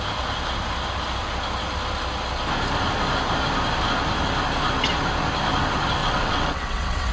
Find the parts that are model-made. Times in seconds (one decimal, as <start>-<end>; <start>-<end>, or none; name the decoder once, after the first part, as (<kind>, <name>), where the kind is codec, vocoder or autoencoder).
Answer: 6.0-7.1 (vocoder, WaveNeXt)